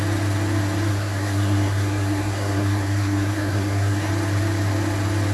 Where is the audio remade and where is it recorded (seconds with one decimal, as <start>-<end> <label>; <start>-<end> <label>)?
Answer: 0.0-0.9 recorded; 0.9-4.1 remade; 4.1-5.3 recorded